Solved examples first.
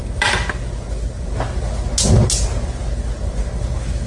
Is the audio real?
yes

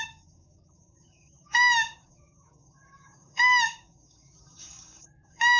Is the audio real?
no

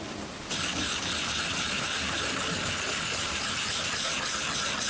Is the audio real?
yes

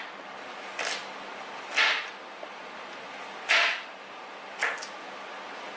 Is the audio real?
yes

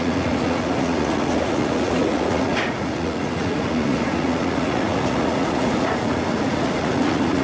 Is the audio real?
no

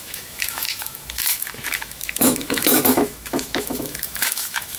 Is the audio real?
no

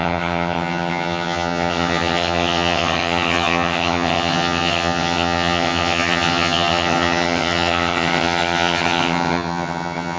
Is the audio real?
no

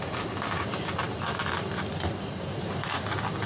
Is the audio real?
yes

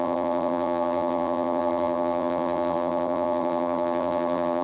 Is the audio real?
no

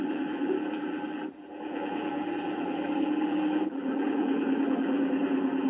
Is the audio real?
no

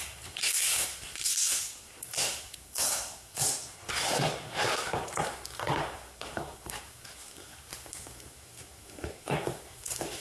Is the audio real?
no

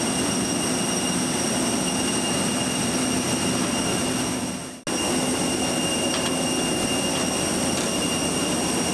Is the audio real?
yes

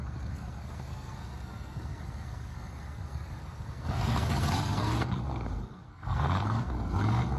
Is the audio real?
no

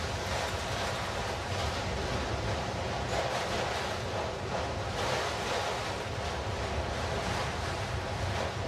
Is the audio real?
yes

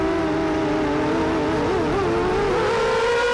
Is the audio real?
yes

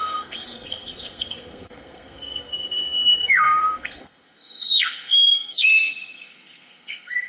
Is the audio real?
no